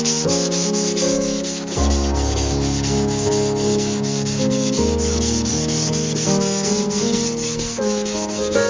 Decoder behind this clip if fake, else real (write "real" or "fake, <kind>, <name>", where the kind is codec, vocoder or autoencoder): fake, codec, SNAC